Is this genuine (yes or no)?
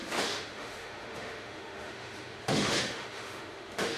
no